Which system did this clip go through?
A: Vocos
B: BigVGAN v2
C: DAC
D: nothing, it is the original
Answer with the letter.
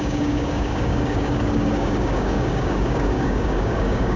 C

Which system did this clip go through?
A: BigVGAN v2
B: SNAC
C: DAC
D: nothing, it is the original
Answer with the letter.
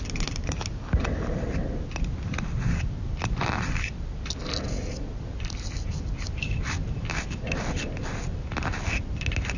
D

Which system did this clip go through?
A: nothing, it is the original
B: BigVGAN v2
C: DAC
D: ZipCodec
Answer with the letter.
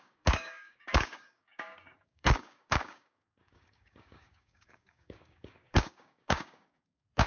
C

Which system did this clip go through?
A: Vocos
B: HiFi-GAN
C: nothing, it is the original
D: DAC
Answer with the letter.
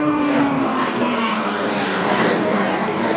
D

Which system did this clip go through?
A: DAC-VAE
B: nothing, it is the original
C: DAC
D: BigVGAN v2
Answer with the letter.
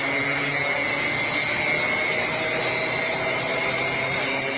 B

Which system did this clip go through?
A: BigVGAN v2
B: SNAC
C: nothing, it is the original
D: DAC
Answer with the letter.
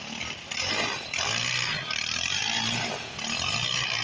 C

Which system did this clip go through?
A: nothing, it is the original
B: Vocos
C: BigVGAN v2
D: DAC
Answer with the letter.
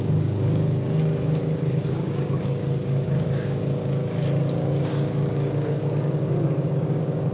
D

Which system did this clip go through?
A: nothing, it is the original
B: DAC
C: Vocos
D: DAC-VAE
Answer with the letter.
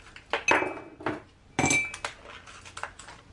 A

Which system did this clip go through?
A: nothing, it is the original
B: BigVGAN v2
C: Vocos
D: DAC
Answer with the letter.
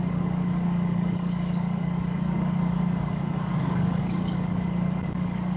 D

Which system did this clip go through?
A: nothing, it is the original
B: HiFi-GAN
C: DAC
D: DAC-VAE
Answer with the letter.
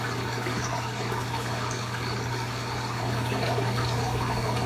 C